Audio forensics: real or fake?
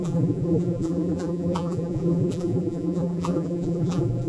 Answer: fake